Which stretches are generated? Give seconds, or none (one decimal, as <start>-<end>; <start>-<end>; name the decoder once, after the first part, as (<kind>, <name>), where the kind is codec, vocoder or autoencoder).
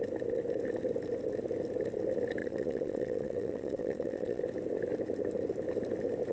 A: 2.4-4.4 (vocoder, Vocos)